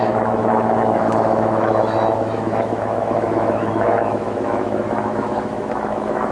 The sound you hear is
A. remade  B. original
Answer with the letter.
A